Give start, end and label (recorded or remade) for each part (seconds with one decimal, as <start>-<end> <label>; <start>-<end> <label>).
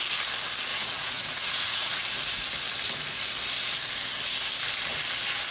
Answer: 0.0-0.7 recorded; 0.7-2.0 remade; 2.0-5.5 recorded